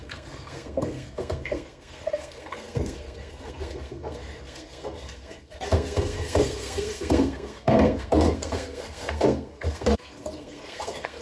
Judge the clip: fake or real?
fake